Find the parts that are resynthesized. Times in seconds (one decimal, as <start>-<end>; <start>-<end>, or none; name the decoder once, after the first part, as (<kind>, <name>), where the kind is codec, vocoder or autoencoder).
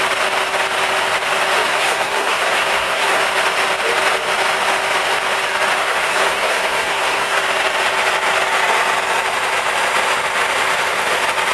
1.7-3.2 (codec, SNAC); 5.8-7.4